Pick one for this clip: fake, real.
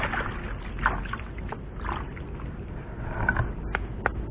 real